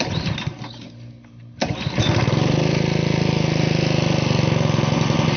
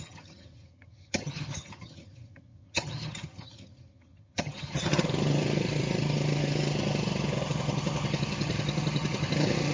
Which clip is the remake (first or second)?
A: second